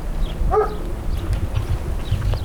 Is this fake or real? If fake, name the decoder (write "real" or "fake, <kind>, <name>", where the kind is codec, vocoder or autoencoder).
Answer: real